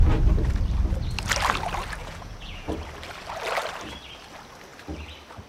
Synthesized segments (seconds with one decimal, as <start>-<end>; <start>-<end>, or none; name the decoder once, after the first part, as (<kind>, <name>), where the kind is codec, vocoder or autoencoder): 2.0-2.7 (vocoder, Vocos)